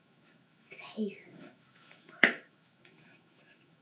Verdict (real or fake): fake